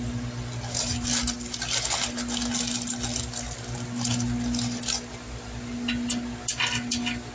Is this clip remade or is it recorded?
recorded